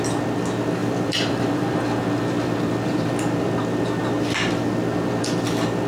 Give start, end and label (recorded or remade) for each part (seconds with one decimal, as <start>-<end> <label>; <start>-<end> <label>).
0.0-0.8 recorded; 0.8-3.1 remade; 3.1-5.9 recorded